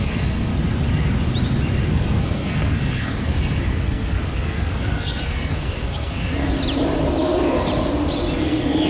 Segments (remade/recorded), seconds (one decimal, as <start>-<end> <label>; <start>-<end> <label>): 0.0-0.5 remade; 0.5-1.9 recorded; 1.9-6.4 remade; 6.4-7.2 recorded; 7.2-7.7 remade; 7.7-8.4 recorded; 8.4-8.9 remade